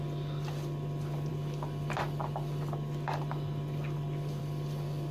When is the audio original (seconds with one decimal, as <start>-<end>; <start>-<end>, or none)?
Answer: 0.0-5.1